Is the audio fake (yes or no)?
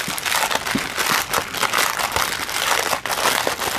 no